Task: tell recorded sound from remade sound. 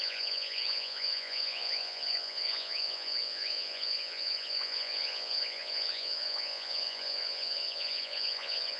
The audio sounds remade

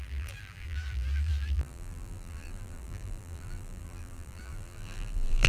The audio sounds remade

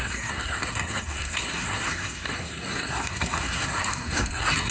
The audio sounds remade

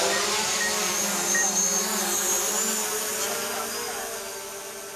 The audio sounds recorded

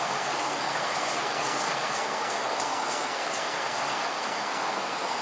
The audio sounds remade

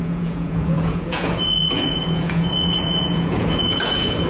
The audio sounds remade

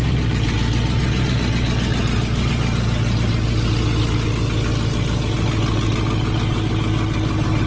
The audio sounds recorded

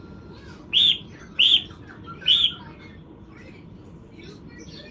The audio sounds recorded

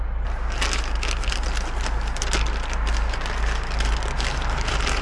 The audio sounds recorded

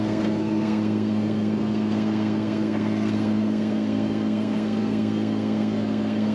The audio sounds remade